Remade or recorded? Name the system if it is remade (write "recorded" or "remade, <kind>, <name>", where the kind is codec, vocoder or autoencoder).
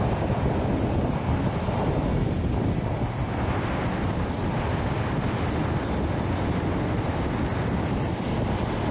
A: recorded